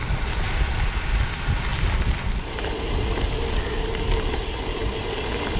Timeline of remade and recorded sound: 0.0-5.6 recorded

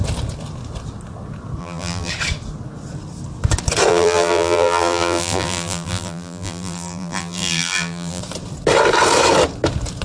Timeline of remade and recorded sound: 0.0-1.6 recorded; 1.6-2.1 remade; 2.1-3.9 recorded; 3.9-8.2 remade; 8.2-10.0 recorded

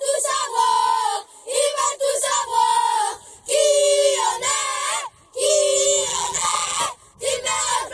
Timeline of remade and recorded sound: 0.0-6.1 recorded; 6.1-6.8 remade; 6.8-7.9 recorded

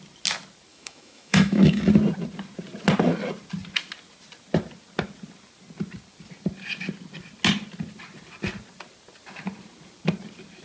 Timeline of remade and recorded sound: 0.0-0.7 recorded; 0.7-1.8 remade; 1.8-10.6 recorded

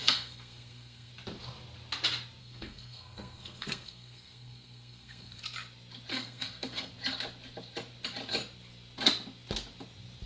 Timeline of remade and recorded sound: 0.0-1.1 remade; 1.1-2.4 recorded; 2.4-5.4 remade; 5.4-6.1 recorded; 6.1-6.9 remade; 6.9-10.3 recorded